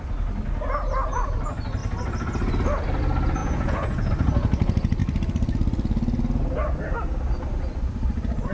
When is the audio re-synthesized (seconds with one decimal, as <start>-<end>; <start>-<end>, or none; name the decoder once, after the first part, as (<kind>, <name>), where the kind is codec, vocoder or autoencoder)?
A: 3.4-4.1 (vocoder, Vocos)